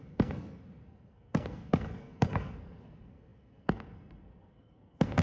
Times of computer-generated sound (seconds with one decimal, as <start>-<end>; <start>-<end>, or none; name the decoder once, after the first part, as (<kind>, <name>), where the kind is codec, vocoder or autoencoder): 0.0-5.2 (codec, SNAC)